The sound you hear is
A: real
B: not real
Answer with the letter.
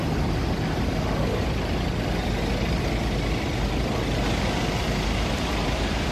A